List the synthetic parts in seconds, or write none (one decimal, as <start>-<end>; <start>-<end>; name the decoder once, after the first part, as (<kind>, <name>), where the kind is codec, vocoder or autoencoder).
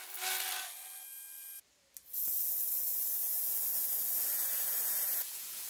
2.9-5.7 (vocoder, Vocos)